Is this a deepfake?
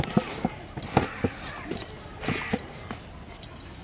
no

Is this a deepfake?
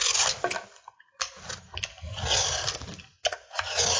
no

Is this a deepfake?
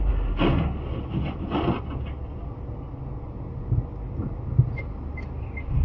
no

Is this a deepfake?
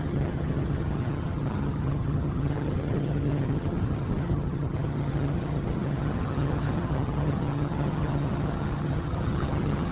yes